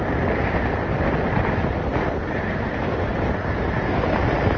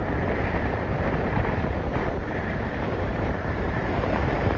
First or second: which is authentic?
first